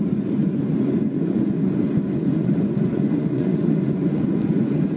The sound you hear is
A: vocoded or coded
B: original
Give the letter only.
A